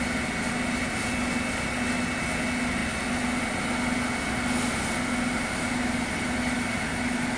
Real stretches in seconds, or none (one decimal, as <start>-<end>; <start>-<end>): 0.0-7.4